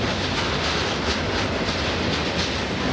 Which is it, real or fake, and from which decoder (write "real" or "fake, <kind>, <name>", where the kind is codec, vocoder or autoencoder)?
real